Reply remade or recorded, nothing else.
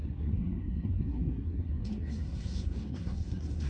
remade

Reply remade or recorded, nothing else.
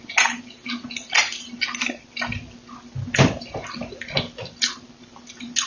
recorded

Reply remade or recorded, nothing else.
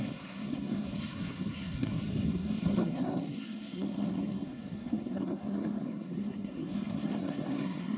remade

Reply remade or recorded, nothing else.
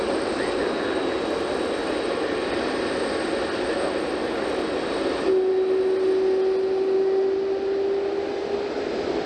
recorded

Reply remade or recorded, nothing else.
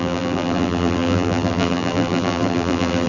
remade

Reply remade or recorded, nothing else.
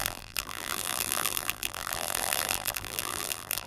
remade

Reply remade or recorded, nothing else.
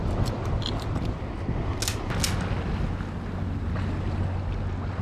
recorded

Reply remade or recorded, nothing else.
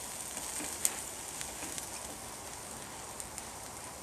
recorded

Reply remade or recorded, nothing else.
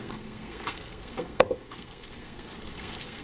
remade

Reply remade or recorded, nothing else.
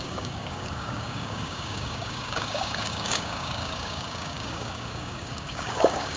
remade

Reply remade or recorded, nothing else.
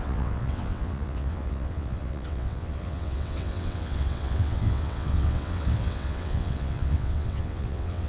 remade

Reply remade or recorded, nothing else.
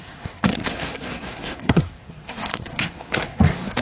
remade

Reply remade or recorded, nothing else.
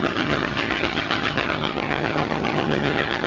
remade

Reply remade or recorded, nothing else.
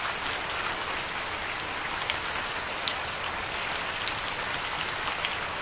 recorded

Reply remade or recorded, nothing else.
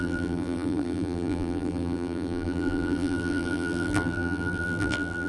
remade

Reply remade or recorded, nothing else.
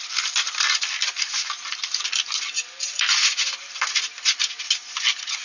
recorded